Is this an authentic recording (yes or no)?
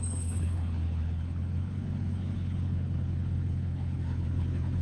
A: no